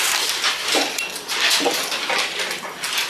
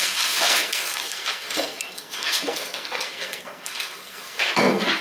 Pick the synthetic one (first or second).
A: second